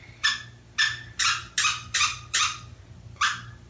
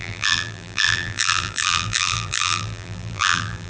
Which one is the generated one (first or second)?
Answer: second